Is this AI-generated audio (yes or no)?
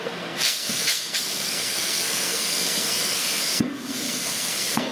yes